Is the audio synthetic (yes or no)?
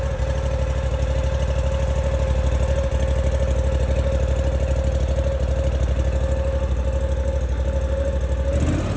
no